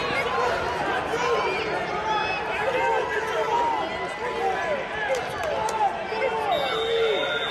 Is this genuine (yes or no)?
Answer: yes